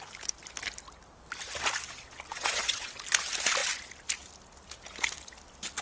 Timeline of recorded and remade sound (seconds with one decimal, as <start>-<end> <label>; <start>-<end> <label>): 0.0-2.3 recorded; 2.3-2.9 remade; 2.9-5.8 recorded